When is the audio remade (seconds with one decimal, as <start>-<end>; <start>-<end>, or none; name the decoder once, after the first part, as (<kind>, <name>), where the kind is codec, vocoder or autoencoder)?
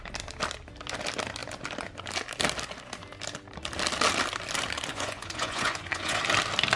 4.9-6.2 (vocoder, Vocos)